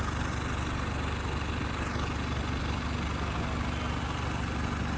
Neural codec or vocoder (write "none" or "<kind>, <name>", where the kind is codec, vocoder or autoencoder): none